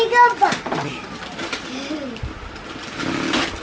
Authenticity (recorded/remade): remade